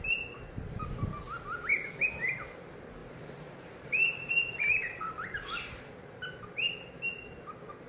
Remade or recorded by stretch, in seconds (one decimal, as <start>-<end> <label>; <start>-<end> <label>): 0.0-3.0 recorded; 3.0-5.9 remade; 5.9-7.9 recorded